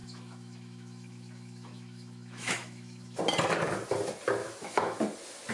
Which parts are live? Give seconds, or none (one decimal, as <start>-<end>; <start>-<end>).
3.2-4.4; 5.0-5.5

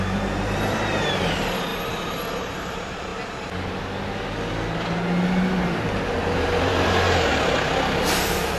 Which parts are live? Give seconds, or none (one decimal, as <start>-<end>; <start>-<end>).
1.7-2.4; 3.1-6.1; 7.3-8.0